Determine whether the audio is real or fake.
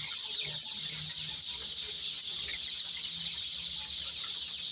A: real